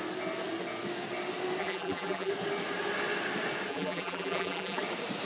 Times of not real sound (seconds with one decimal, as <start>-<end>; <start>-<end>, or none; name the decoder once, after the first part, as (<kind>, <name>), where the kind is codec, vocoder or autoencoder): 1.6-2.3 (vocoder, BigVGAN v2); 3.7-4.8